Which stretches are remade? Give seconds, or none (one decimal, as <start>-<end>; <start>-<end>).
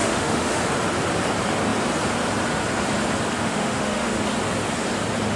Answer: 0.0-0.6; 3.4-4.2